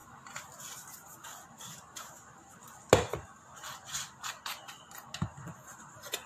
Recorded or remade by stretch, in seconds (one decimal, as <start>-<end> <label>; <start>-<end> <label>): 0.0-6.3 recorded